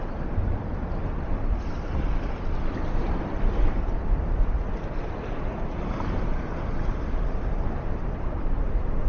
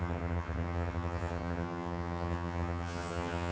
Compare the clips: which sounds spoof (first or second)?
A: second